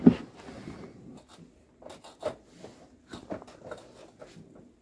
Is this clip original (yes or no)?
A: yes